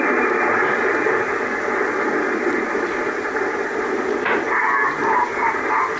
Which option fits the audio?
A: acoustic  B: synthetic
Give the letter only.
B